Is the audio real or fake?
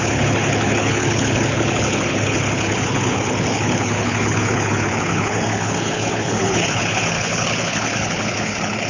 fake